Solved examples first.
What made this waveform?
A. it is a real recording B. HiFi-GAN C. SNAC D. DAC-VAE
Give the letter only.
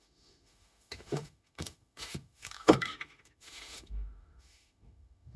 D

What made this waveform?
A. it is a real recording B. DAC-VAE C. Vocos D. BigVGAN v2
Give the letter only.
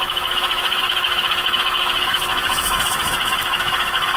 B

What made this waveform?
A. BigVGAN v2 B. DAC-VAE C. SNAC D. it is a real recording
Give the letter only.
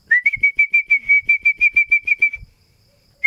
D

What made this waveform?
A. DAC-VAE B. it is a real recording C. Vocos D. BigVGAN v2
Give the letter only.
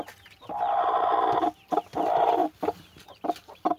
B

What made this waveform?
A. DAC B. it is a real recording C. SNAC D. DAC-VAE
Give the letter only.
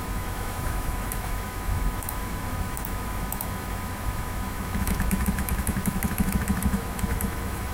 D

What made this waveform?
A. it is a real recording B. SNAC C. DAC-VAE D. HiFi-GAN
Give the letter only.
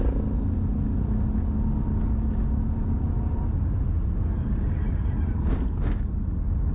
A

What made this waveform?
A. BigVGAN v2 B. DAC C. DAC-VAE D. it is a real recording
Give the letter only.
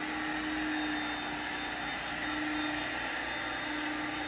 D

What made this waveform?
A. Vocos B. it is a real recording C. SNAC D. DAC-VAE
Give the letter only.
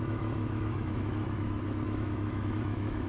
D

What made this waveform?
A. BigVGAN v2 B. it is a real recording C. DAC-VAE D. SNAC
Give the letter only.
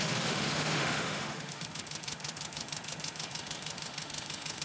C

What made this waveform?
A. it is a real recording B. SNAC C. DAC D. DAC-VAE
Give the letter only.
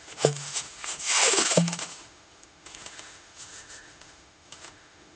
D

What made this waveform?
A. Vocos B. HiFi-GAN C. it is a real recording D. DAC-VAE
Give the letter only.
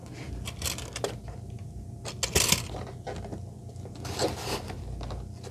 C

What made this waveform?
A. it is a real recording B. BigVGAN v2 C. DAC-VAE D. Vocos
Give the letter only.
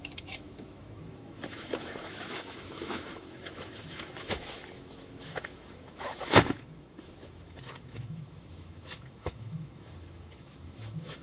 C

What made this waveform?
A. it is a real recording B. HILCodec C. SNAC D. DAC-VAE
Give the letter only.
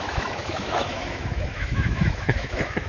D